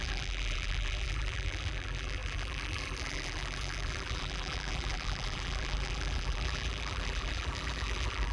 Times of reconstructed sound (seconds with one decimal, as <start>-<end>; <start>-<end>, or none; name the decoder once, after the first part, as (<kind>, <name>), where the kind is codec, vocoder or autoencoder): 0.0-8.3 (vocoder, BigVGAN v2)

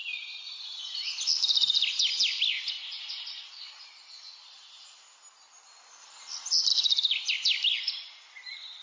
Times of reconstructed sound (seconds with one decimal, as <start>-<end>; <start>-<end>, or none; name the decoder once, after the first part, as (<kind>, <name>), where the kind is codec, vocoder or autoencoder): none

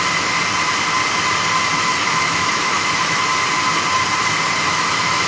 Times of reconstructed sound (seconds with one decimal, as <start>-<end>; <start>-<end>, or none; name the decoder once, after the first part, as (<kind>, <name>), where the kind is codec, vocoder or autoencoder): 1.9-3.2 (autoencoder, DAC-VAE); 4.7-5.3

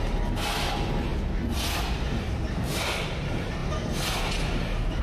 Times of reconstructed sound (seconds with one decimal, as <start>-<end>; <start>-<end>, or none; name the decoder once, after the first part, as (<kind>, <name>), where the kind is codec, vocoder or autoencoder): none

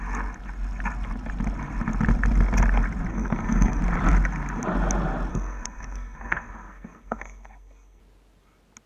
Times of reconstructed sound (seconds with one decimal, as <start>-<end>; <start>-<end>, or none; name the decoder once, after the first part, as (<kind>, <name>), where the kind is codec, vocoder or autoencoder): 3.1-3.8 (codec, SNAC); 5.3-8.0

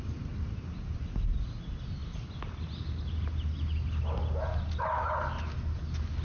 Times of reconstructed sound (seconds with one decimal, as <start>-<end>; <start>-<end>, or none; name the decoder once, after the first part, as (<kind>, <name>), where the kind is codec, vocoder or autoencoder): none